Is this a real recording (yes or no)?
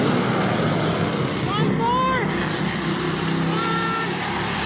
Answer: yes